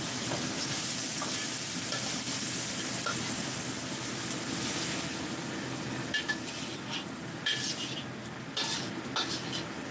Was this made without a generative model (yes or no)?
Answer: yes